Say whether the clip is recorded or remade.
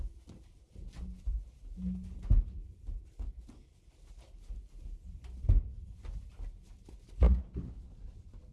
recorded